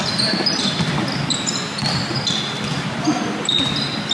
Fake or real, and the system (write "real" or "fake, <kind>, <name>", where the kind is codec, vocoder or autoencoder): real